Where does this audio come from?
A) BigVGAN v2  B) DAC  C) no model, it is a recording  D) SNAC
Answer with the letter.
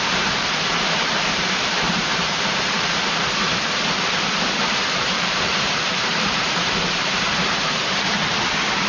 A